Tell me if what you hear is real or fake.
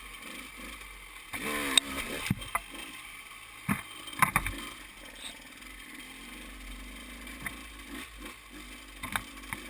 real